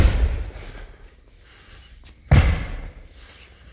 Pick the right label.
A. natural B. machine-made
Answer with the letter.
A